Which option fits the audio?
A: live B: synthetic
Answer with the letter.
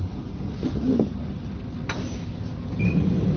A